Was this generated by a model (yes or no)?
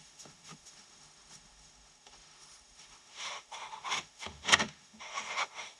yes